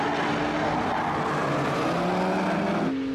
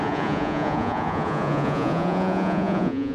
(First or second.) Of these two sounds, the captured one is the first